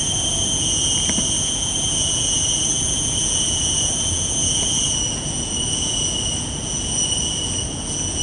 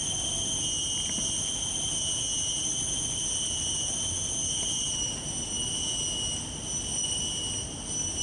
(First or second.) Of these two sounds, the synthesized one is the first